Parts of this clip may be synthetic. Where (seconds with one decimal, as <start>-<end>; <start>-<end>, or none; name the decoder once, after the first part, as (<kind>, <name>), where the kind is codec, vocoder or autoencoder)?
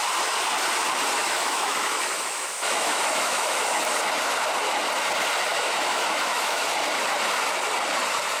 1.2-4.0 (autoencoder, DAC-VAE); 5.5-6.6